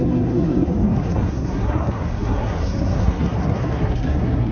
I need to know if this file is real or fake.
fake